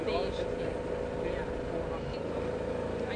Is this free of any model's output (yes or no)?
yes